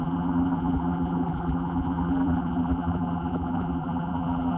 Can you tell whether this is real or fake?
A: fake